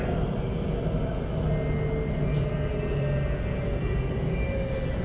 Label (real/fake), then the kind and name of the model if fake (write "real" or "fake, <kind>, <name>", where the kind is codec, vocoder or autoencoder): real